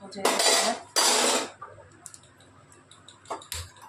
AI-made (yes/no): no